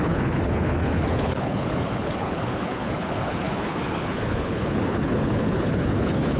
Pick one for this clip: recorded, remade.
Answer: remade